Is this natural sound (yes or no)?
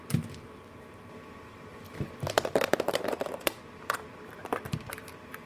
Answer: no